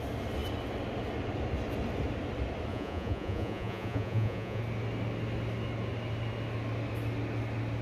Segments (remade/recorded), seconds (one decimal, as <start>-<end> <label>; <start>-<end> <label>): 0.0-2.7 recorded; 2.7-4.6 remade; 4.6-7.8 recorded